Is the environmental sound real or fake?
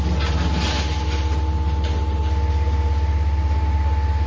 real